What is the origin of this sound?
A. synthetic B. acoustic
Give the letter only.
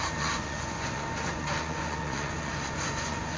A